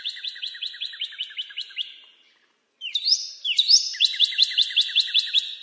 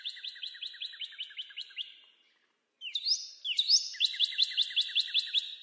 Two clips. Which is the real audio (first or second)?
second